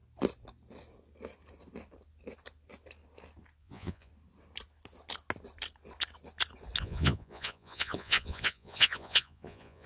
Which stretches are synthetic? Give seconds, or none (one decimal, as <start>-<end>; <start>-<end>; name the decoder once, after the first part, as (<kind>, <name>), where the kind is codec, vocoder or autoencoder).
3.6-4.1 (vocoder, Vocos); 6.8-9.9